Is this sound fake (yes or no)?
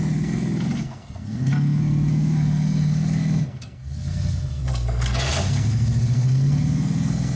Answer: yes